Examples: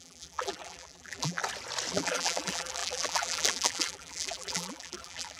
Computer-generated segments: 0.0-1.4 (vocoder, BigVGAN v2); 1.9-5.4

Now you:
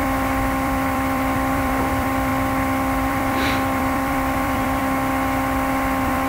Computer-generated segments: 0.0-2.3 (vocoder, BigVGAN v2); 3.1-4.8; 5.7-6.3

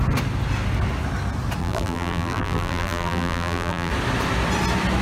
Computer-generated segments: 1.6-3.9 (vocoder, BigVGAN v2)

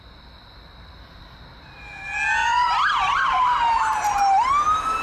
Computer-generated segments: 2.4-3.4 (vocoder, BigVGAN v2)

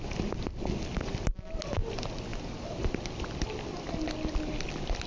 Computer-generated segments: none

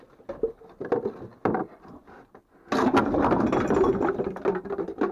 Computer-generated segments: none